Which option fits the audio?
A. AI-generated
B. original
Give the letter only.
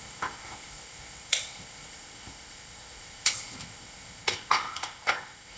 A